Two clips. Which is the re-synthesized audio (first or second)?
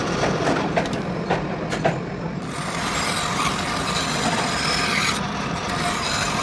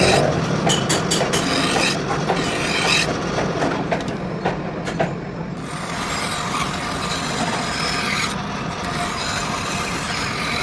first